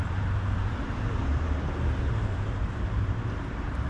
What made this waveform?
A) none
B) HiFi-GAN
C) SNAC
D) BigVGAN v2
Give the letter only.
D